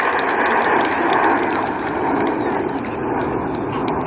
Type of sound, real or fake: real